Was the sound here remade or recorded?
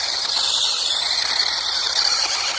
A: recorded